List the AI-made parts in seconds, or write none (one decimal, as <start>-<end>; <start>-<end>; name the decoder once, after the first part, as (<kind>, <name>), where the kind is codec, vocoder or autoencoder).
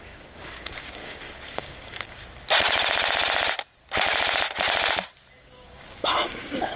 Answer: 0.0-2.2 (codec, DAC); 5.4-6.8